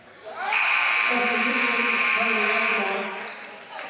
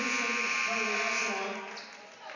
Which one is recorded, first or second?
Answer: second